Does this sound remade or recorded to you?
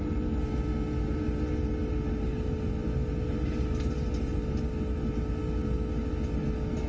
recorded